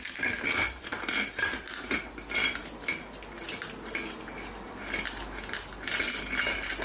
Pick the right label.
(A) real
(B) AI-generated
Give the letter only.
A